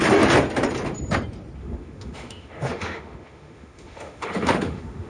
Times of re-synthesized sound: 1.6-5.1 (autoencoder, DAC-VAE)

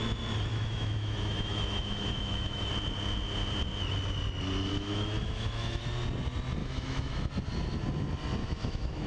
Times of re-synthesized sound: 0.5-2.7 (autoencoder, DAC-VAE); 4.7-5.8; 6.6-7.3; 8.4-9.1

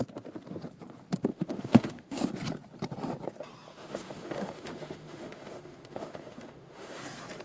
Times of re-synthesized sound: 1.3-2.4 (autoencoder, DAC-VAE); 3.7-7.0